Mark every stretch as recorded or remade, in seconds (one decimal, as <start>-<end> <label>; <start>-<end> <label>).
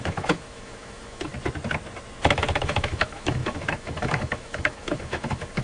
0.0-1.3 remade; 1.3-2.2 recorded; 2.2-5.6 remade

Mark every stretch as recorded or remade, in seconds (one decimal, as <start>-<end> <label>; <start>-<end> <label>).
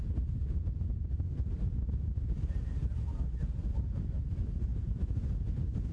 0.0-5.9 recorded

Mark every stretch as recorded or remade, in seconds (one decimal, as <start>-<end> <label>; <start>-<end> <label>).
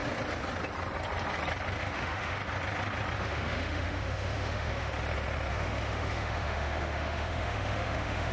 0.0-1.8 recorded; 1.8-2.4 remade; 2.4-3.2 recorded; 3.2-4.9 remade; 4.9-5.5 recorded; 5.5-8.3 remade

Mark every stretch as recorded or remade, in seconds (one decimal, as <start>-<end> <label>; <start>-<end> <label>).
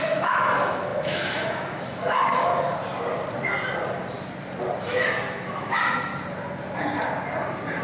0.0-2.5 remade; 2.5-4.8 recorded; 4.8-6.1 remade; 6.1-7.8 recorded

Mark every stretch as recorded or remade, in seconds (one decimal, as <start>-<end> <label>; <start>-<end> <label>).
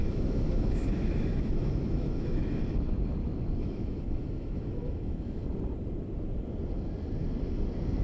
0.0-2.6 remade; 2.6-3.6 recorded; 3.6-5.4 remade; 5.4-8.0 recorded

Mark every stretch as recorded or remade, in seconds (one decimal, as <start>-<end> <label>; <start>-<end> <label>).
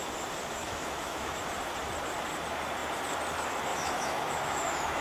0.0-0.6 recorded; 0.6-1.4 remade; 1.4-3.7 recorded; 3.7-5.0 remade